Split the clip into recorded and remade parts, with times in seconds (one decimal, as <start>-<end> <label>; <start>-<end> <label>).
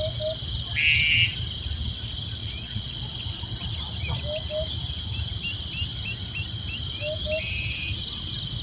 0.0-2.4 recorded; 2.4-3.0 remade; 3.0-8.6 recorded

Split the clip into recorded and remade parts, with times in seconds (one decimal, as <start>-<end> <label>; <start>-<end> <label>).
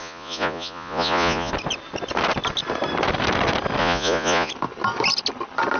0.0-1.5 remade; 1.5-3.8 recorded; 3.8-4.5 remade; 4.5-5.8 recorded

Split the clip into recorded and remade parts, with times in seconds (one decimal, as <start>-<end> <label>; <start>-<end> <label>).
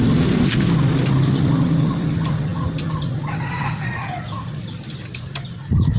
0.0-6.0 recorded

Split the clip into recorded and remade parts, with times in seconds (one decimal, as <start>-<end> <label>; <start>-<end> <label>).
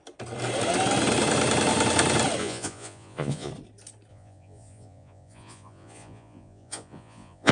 0.0-2.4 recorded; 2.4-3.5 remade; 3.5-4.1 recorded; 4.1-7.5 remade